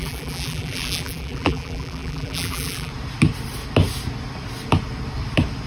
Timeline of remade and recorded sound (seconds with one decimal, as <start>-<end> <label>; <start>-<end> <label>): 0.0-2.9 remade; 2.9-5.7 recorded